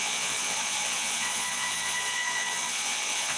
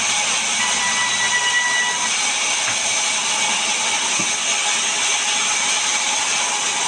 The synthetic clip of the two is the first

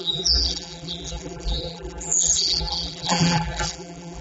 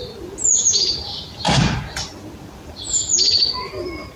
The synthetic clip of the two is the first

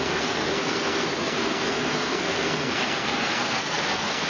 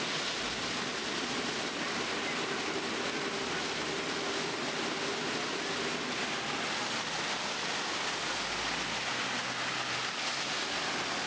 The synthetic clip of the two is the first